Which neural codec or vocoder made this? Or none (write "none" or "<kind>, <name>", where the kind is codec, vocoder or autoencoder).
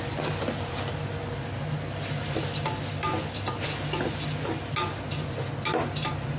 none